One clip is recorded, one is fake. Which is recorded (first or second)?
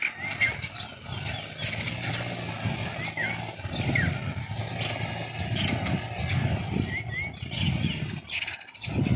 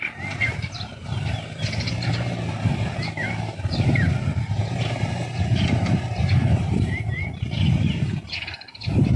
first